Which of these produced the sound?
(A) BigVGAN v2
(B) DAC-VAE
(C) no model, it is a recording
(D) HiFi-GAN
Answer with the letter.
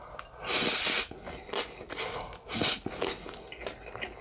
C